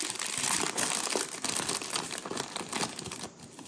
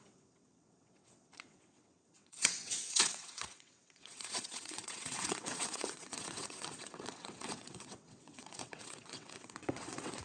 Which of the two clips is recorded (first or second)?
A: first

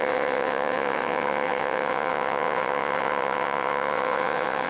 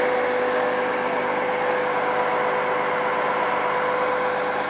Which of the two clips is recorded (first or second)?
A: second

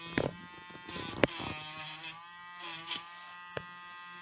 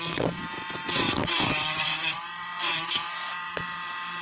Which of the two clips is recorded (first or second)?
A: first